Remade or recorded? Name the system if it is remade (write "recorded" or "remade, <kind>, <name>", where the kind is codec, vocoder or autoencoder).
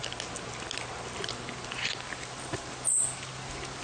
recorded